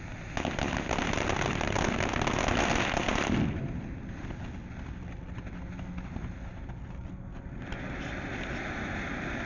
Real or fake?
real